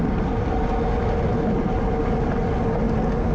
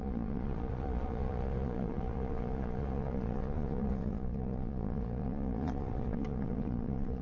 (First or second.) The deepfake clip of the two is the second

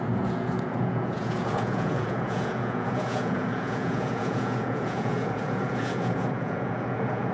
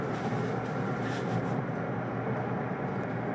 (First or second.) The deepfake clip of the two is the first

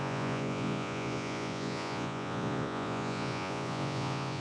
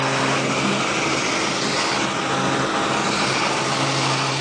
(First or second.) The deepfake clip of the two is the first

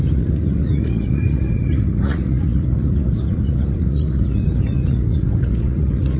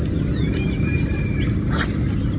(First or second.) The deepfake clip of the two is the first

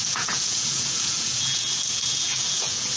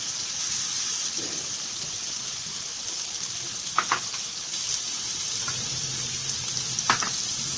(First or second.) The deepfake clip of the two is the first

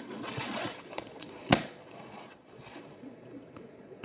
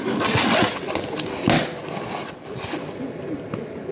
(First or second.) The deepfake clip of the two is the first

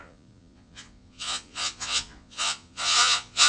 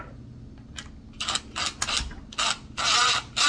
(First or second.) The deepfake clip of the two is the first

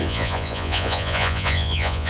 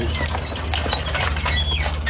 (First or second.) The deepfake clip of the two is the first